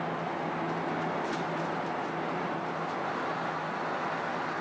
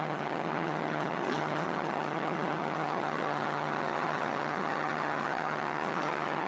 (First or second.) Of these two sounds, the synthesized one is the second